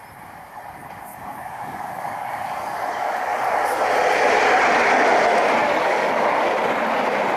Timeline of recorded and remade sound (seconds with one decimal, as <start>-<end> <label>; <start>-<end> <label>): 0.0-1.1 recorded; 1.1-3.8 remade; 3.8-5.6 recorded; 5.6-6.5 remade; 6.5-7.4 recorded